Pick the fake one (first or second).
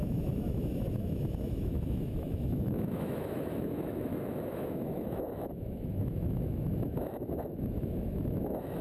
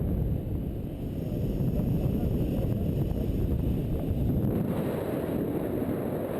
first